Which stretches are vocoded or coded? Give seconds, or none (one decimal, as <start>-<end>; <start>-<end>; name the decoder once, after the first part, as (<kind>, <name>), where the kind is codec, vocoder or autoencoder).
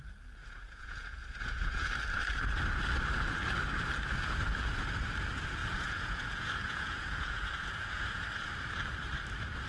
0.4-1.9 (vocoder, Vocos); 5.6-8.2